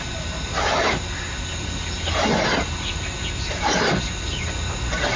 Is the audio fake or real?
real